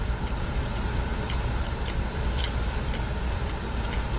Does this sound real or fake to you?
fake